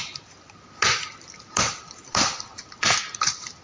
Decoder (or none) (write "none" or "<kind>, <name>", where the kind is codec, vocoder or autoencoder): none